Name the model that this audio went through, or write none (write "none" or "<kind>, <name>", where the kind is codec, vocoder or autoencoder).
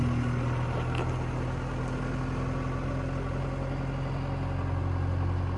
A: none